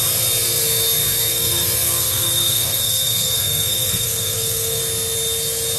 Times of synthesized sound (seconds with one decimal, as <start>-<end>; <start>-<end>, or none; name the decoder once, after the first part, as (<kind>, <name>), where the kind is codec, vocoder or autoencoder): 1.3-4.8 (codec, SNAC)

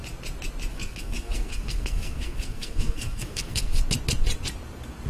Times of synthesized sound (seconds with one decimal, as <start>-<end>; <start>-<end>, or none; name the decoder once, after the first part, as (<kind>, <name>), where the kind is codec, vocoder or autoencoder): 0.7-3.8 (codec, SNAC)